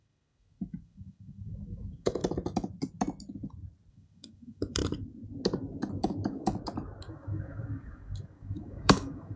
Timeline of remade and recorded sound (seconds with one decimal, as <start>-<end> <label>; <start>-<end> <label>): 0.0-2.2 remade; 2.2-3.9 recorded; 3.9-4.8 remade; 4.8-5.9 recorded; 5.9-6.5 remade; 6.5-7.0 recorded; 7.0-9.4 remade